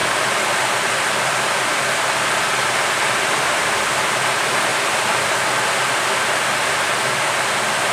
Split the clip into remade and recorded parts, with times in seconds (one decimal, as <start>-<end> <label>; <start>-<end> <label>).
0.0-7.9 recorded